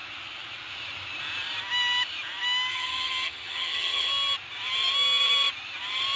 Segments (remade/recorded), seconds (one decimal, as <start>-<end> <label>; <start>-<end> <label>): 0.0-2.7 recorded; 2.7-4.1 remade; 4.1-6.2 recorded